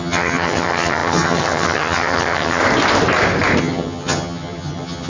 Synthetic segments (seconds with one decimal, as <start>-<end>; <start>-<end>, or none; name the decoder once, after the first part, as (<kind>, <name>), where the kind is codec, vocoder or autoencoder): 0.0-2.6 (vocoder, HiFi-GAN); 3.6-5.1

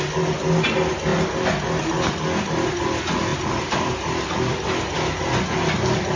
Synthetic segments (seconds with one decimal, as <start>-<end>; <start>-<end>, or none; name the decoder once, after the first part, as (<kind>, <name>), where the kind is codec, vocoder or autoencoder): none

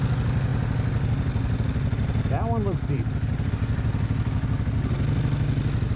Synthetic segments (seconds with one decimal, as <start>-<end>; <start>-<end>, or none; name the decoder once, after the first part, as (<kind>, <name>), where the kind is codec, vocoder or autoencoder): none

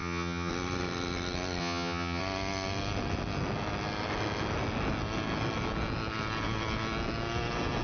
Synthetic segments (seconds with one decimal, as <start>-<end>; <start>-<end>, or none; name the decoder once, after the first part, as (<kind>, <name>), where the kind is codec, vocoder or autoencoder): 0.0-0.5 (vocoder, HiFi-GAN); 1.6-2.2

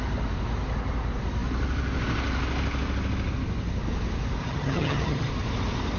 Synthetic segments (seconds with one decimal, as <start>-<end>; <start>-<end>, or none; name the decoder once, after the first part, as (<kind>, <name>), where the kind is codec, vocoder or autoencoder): 4.4-5.3 (vocoder, HiFi-GAN)